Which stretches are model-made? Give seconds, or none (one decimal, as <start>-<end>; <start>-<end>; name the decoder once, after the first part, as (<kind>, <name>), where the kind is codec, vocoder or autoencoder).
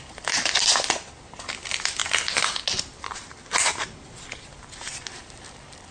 none